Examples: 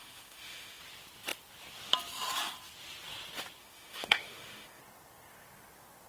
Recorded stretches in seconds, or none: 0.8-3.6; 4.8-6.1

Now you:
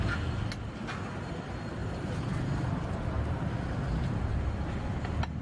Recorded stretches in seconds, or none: 0.0-1.8; 4.3-5.4